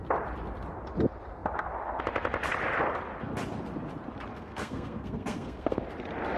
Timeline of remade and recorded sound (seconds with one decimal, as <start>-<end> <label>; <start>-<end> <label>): 0.0-4.3 recorded; 4.3-5.8 remade; 5.8-6.4 recorded